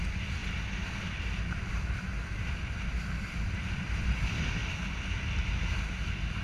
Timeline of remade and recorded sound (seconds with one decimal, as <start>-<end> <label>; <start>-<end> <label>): 0.0-6.4 recorded